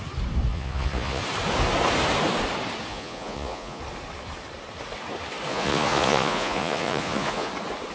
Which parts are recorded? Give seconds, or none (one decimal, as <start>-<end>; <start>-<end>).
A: 0.0-0.5; 1.2-2.9; 3.8-5.5; 7.5-7.9